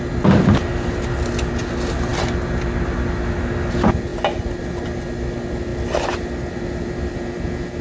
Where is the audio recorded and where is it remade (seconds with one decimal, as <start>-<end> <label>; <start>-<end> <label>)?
0.0-7.8 recorded